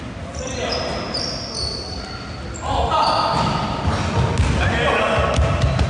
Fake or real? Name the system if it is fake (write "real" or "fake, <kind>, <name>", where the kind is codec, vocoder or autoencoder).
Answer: real